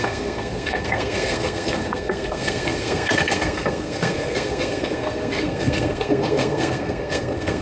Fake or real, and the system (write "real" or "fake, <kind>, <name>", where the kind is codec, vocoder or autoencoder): fake, codec, SNAC